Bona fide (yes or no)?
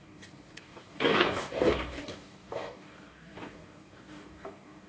no